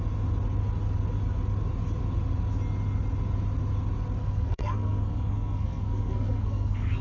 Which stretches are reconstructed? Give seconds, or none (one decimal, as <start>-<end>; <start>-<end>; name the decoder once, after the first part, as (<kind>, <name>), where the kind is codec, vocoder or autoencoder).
4.2-7.0 (codec, SNAC)